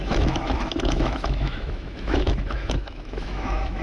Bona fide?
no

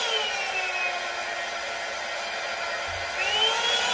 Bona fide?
yes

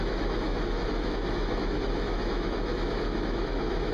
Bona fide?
no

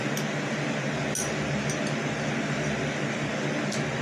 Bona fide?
yes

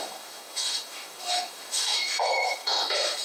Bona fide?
no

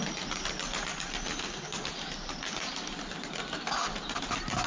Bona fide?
yes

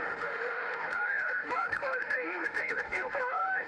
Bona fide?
no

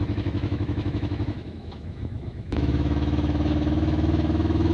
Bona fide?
no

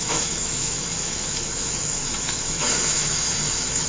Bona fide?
no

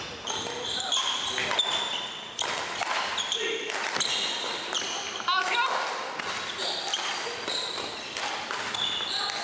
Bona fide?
yes